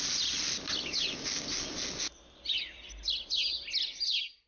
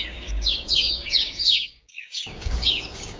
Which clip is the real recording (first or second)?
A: first